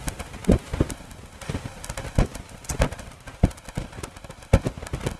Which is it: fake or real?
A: real